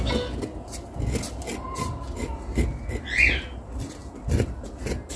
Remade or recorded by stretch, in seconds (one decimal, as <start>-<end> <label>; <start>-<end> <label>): 0.0-5.2 recorded